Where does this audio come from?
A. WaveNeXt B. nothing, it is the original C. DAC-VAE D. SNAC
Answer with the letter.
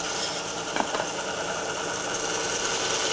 B